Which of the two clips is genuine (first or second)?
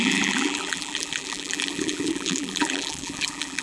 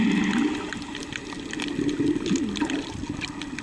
second